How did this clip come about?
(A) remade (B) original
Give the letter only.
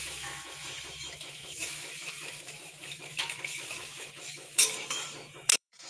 A